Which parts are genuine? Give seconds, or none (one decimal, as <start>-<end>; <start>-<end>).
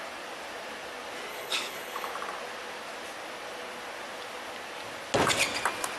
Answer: 0.0-1.3; 2.1-6.0